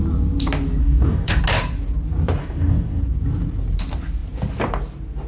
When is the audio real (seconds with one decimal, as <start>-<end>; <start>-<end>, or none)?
0.0-0.8; 1.4-2.4; 3.0-5.3